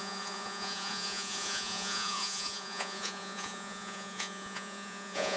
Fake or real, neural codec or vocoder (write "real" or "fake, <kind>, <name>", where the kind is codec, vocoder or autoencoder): fake, vocoder, Vocos